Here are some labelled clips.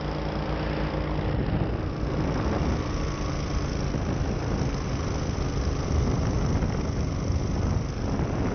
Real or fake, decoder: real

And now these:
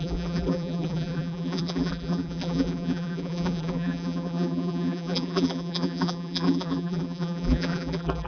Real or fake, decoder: fake, vocoder, BigVGAN v2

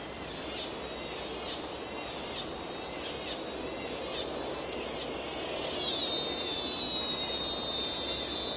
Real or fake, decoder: real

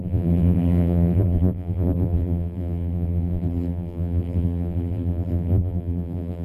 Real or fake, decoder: fake, vocoder, BigVGAN v2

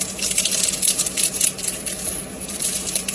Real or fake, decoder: fake, vocoder, BigVGAN v2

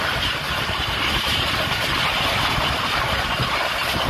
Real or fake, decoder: real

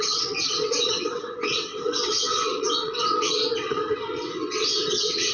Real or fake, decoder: fake, vocoder, WaveNeXt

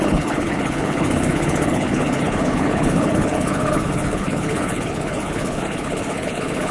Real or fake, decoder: fake, codec, HILCodec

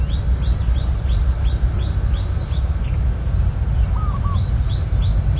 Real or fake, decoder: real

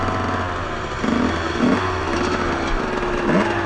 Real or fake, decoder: real